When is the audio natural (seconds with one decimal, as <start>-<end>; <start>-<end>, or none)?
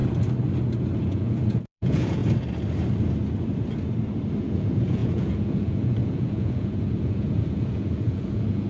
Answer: 0.0-1.0; 2.2-4.4